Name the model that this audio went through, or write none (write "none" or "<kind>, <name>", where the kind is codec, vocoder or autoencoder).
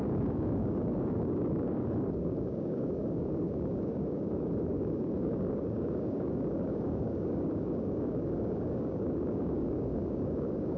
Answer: codec, DAC